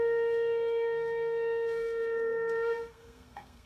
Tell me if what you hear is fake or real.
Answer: fake